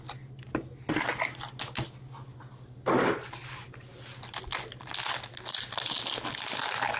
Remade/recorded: recorded